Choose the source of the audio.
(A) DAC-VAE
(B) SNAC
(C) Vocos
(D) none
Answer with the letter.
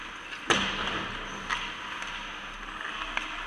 D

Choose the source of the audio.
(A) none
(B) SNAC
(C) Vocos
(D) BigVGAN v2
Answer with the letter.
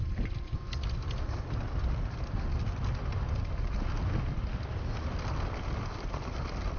A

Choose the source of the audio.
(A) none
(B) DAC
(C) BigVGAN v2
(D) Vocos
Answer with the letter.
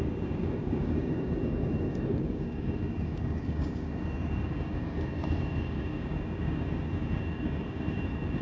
B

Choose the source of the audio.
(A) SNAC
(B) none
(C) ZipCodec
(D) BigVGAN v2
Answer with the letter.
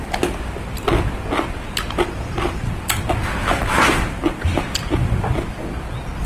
B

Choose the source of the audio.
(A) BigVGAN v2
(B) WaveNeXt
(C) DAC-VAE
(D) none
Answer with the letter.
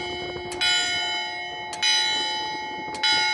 D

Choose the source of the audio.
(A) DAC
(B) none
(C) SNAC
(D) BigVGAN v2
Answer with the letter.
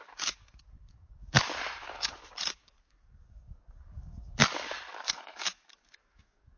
A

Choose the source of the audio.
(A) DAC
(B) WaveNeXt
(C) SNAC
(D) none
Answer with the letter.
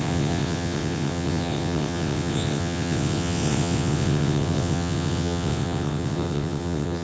B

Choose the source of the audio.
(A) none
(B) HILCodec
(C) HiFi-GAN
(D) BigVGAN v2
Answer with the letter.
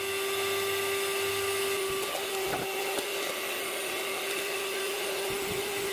A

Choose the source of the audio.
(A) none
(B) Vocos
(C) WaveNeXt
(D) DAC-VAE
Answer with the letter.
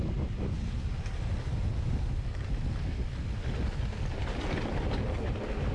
A